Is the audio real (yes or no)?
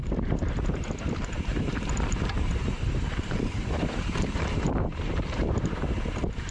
no